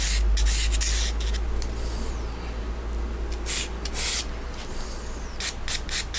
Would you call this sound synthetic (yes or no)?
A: no